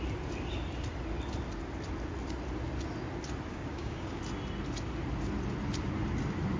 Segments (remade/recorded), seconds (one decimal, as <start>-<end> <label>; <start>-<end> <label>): 0.0-3.5 recorded; 3.5-4.2 remade; 4.2-6.6 recorded